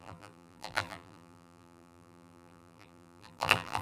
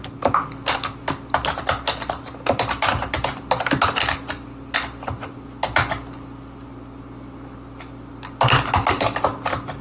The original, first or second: second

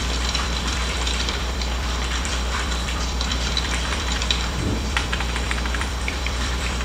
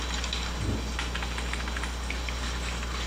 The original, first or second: second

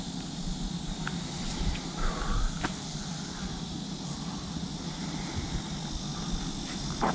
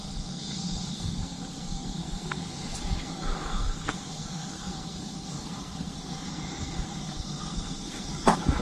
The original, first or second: first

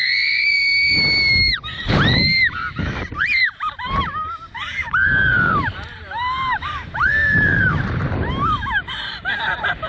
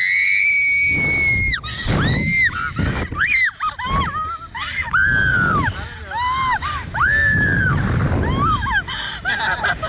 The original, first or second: second